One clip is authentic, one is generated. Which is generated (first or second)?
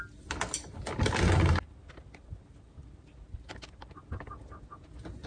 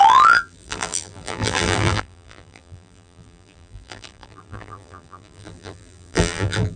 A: second